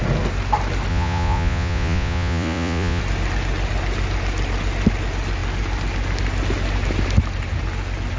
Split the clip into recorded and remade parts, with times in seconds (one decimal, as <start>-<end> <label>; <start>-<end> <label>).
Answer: 0.0-0.9 recorded; 0.9-3.0 remade; 3.0-8.2 recorded